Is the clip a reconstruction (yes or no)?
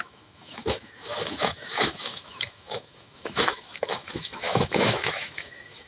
yes